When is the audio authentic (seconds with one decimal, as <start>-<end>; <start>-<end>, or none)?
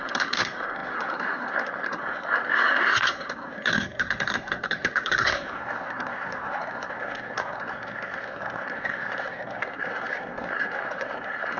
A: none